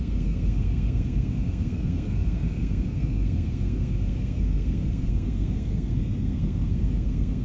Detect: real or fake fake